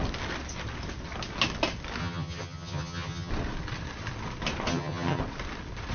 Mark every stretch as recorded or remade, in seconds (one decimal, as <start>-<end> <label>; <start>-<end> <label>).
0.0-2.0 recorded; 2.0-3.3 remade; 3.3-4.7 recorded; 4.7-5.2 remade; 5.2-5.9 recorded